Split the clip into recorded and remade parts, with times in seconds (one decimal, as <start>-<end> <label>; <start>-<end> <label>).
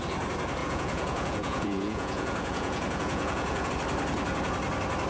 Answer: 0.0-0.6 recorded; 0.6-3.7 remade; 3.7-5.1 recorded